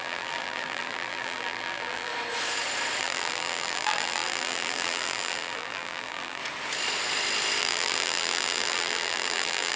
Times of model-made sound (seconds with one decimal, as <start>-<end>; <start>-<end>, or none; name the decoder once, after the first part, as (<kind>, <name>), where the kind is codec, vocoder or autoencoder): 0.0-2.1 (vocoder, BigVGAN v2); 3.0-6.4; 7.6-9.8